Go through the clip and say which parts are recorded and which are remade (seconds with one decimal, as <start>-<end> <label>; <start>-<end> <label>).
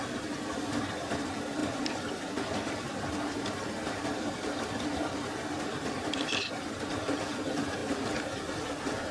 0.0-9.1 recorded